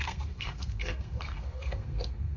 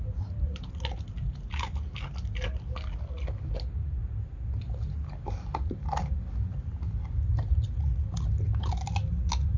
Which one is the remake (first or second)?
first